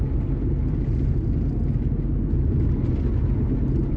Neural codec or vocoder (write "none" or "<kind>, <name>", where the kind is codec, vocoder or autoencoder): none